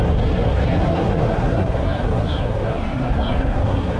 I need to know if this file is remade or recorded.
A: remade